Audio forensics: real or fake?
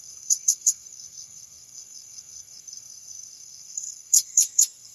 fake